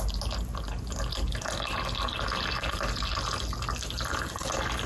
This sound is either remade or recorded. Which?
recorded